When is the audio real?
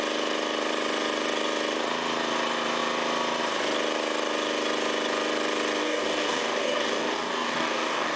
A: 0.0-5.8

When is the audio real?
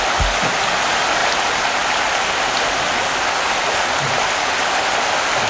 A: 0.0-5.5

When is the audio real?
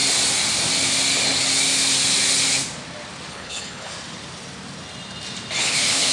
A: 0.0-3.3; 3.9-5.6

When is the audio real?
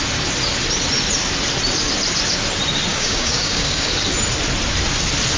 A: 0.0-2.9; 3.9-5.4